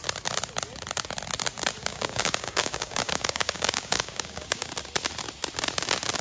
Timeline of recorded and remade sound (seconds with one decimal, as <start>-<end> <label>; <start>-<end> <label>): 0.0-1.8 recorded; 1.8-4.7 remade; 4.7-6.2 recorded